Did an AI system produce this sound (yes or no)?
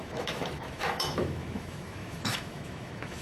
yes